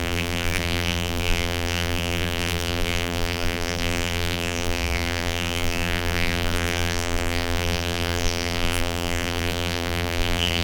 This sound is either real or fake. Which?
fake